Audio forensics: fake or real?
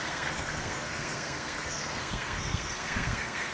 fake